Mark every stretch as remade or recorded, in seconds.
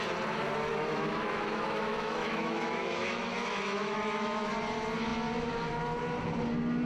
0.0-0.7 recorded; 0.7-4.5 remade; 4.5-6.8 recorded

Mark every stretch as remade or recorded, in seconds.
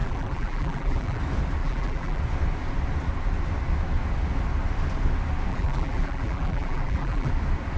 0.0-1.2 remade; 1.2-1.6 recorded; 1.6-2.2 remade; 2.2-5.5 recorded; 5.5-7.3 remade; 7.3-7.8 recorded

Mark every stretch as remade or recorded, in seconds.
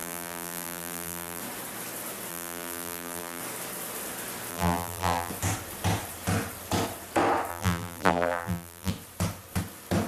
0.0-1.4 remade; 1.4-2.3 recorded; 2.3-3.4 remade; 3.4-4.5 recorded; 4.5-5.3 remade; 5.3-7.5 recorded; 7.5-8.9 remade; 8.9-10.1 recorded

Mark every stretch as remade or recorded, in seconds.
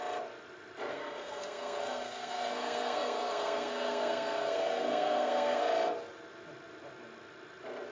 0.0-0.9 recorded; 0.9-5.6 remade; 5.6-7.9 recorded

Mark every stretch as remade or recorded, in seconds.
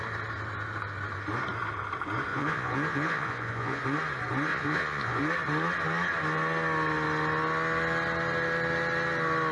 0.0-2.3 recorded; 2.3-3.8 remade; 3.8-4.5 recorded; 4.5-5.2 remade; 5.2-9.5 recorded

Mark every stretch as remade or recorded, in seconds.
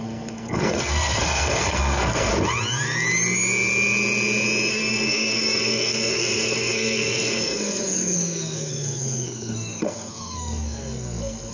0.0-2.3 remade; 2.3-4.7 recorded; 4.7-11.5 remade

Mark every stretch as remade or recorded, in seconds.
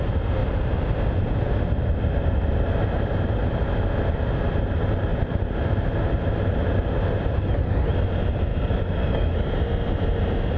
0.0-0.4 recorded; 0.4-1.6 remade; 1.6-5.1 recorded; 5.1-7.7 remade; 7.7-8.5 recorded; 8.5-9.2 remade; 9.2-10.6 recorded